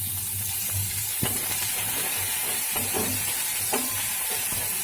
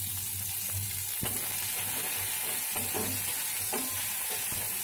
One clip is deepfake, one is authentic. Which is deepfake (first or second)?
first